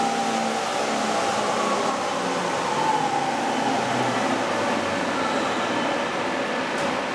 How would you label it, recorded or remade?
recorded